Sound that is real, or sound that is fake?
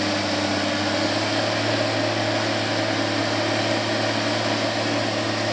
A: real